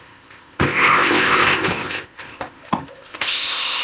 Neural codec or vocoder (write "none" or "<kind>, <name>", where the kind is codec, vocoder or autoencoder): codec, ZipCodec